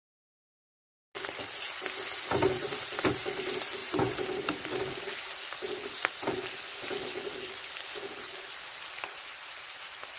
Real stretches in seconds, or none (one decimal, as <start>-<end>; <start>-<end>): 0.0-10.2